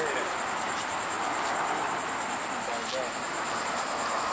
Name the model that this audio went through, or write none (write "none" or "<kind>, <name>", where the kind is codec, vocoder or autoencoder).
none